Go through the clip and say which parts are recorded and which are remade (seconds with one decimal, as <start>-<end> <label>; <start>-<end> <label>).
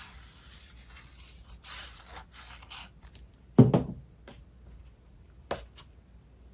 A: 0.0-6.5 recorded